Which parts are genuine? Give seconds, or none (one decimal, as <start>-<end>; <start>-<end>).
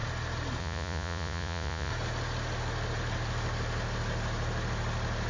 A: 0.0-0.6; 1.9-5.3